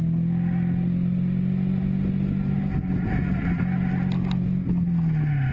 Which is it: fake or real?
real